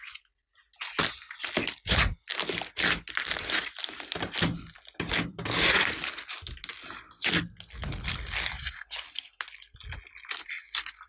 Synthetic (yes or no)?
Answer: no